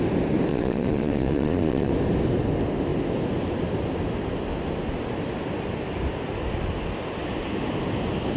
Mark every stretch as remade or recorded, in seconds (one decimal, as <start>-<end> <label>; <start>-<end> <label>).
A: 0.0-0.5 recorded; 0.5-1.9 remade; 1.9-8.4 recorded